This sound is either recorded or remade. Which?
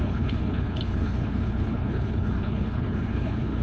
remade